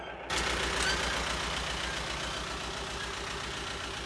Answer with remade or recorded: recorded